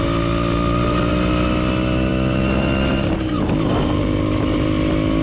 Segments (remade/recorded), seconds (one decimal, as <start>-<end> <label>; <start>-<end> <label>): 0.0-5.2 recorded